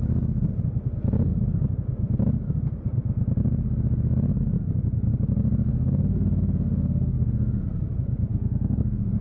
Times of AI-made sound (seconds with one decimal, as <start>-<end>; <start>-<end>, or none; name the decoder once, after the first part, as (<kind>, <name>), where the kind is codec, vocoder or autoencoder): 5.7-7.6 (autoencoder, DAC-VAE); 8.3-9.2